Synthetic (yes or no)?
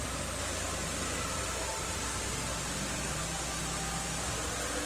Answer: no